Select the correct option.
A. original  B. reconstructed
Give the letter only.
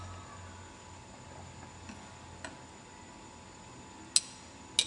A